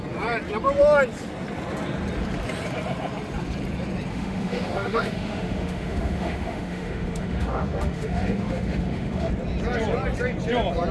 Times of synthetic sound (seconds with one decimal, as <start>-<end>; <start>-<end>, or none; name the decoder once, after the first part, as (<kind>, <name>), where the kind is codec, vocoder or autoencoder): 4.1-9.3 (autoencoder, DAC-VAE)